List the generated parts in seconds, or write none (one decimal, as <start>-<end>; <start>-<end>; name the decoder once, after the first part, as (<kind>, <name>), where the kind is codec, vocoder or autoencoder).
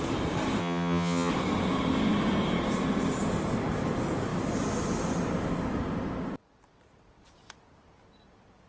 0.6-1.3 (vocoder, HiFi-GAN)